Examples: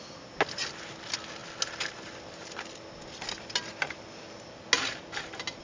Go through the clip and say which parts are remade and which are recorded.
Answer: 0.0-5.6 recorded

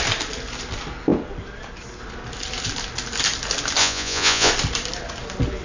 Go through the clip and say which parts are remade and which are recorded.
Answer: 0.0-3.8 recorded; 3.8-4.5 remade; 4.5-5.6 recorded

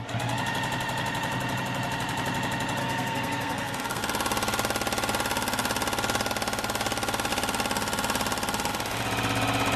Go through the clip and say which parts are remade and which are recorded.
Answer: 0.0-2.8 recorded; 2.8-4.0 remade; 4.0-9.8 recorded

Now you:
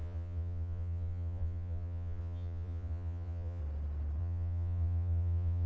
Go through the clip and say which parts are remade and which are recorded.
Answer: 0.0-3.6 remade; 3.6-4.2 recorded; 4.2-5.7 remade

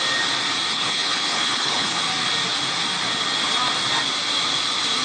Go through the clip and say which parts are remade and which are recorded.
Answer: 0.0-0.7 recorded; 0.7-2.0 remade; 2.0-5.0 recorded

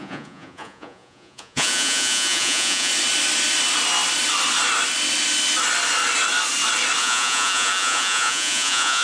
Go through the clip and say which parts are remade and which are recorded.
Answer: 0.0-2.9 remade; 2.9-7.0 recorded; 7.0-9.0 remade